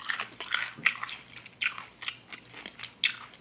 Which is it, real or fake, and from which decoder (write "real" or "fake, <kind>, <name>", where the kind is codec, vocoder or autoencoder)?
real